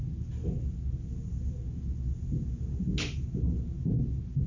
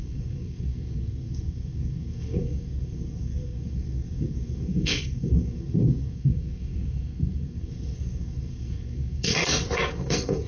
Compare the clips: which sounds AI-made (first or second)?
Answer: second